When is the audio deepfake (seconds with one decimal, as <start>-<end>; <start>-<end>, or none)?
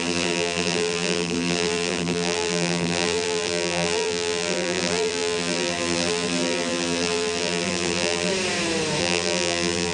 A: 0.0-8.3; 9.0-9.9